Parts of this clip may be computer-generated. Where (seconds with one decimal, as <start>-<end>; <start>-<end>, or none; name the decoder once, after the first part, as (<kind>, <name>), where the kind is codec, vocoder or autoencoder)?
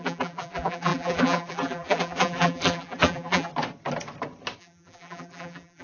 0.0-3.5 (vocoder, BigVGAN v2); 4.6-5.8